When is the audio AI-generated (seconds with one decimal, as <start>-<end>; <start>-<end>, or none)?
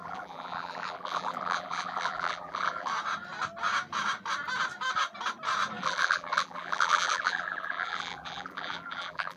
0.0-2.9; 5.8-9.4